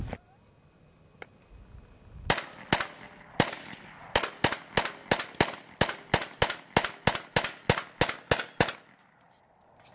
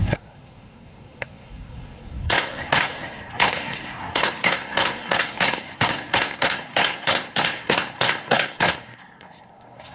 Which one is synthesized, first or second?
second